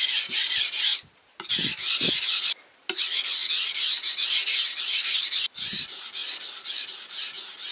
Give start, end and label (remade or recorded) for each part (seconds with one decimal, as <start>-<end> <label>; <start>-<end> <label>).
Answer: 0.0-6.2 recorded; 6.2-6.9 remade; 6.9-7.7 recorded